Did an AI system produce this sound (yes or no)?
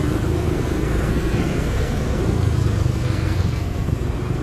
yes